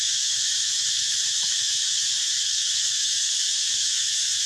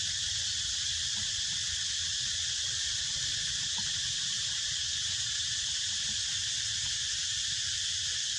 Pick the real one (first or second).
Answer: second